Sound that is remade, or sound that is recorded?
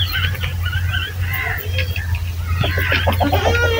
recorded